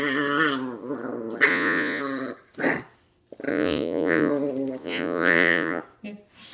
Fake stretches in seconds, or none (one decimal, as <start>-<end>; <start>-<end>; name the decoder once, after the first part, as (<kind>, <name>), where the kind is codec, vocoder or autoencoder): 1.5-2.0 (vocoder, Vocos); 3.5-4.3; 4.8-5.8

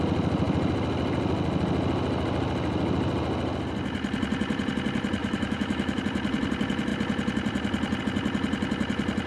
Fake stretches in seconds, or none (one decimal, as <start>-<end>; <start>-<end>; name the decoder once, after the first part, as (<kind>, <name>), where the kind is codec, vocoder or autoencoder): 5.2-6.0 (autoencoder, DAC-VAE)

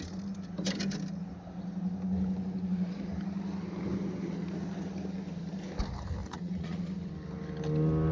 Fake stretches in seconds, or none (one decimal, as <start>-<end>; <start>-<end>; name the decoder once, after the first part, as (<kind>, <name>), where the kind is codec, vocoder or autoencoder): 6.2-6.9 (vocoder, Vocos)

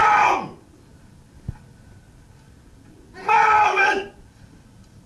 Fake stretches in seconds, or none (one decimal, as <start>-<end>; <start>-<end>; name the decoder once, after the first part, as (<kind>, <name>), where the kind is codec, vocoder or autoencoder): 3.2-3.9 (codec, DAC)